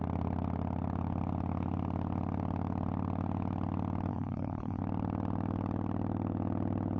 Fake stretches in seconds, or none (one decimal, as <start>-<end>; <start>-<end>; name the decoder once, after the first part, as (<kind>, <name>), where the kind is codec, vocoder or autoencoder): 4.1-4.8 (codec, SNAC)